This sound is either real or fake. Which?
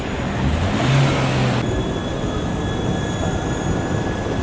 real